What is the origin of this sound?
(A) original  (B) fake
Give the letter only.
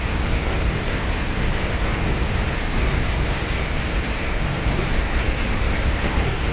B